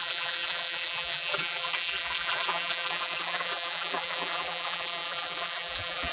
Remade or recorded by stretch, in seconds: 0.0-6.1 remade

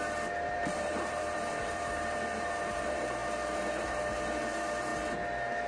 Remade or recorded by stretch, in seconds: 0.0-4.9 remade; 4.9-5.7 recorded

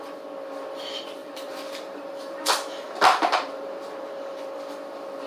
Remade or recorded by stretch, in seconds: 0.0-1.2 recorded; 1.2-4.4 remade; 4.4-5.3 recorded

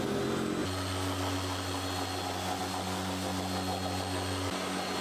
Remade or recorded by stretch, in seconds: 0.0-5.0 recorded

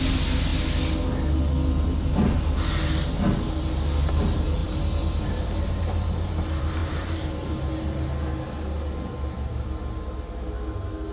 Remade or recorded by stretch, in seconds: 0.0-4.6 recorded; 4.6-6.3 remade; 6.3-6.8 recorded; 6.8-7.7 remade; 7.7-11.1 recorded

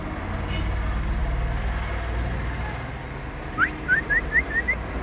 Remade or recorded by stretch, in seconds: 0.0-5.0 recorded

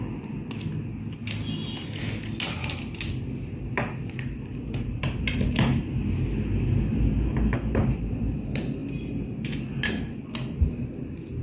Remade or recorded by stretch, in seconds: 0.0-4.5 recorded; 4.5-5.0 remade; 5.0-11.4 recorded

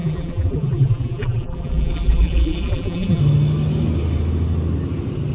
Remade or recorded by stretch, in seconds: 0.0-3.2 remade; 3.2-5.3 recorded